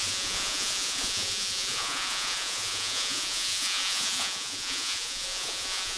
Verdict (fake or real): fake